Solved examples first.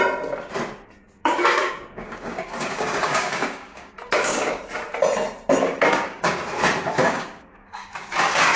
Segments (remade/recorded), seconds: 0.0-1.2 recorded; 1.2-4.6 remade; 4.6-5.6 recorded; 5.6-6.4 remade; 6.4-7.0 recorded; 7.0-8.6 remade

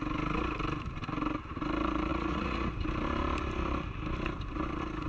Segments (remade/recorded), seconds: 0.0-2.1 recorded; 2.1-2.7 remade; 2.7-5.1 recorded

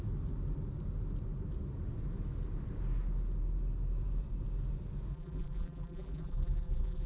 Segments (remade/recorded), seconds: 0.0-5.1 recorded; 5.1-7.1 remade

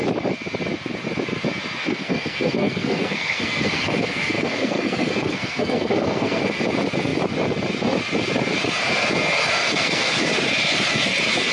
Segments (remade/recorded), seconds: 0.0-1.8 recorded; 1.8-6.4 remade; 6.4-9.6 recorded; 9.6-10.2 remade; 10.2-11.5 recorded